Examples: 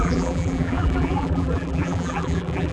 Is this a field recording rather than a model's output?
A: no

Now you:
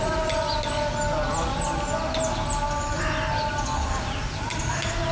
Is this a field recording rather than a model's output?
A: yes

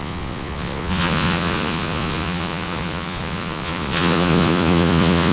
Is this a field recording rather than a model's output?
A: no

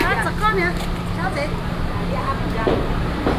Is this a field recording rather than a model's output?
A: yes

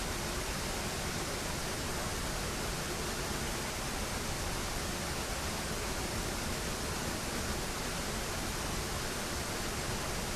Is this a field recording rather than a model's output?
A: yes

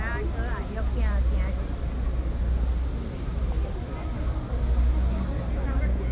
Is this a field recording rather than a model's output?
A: yes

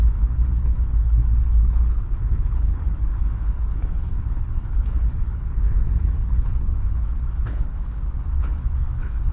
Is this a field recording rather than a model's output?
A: no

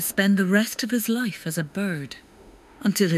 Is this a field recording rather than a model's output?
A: no